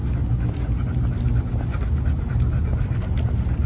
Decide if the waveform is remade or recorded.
recorded